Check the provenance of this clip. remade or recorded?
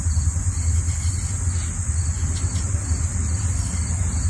recorded